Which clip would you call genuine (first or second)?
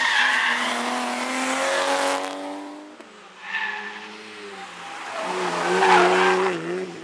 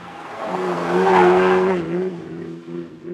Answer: first